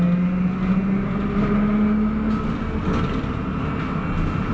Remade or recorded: recorded